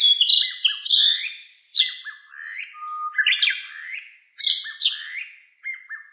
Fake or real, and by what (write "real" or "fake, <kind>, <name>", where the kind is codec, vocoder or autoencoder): real